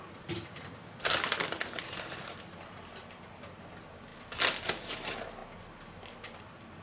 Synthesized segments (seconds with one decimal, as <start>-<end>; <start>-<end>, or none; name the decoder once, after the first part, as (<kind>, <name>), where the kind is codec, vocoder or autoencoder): none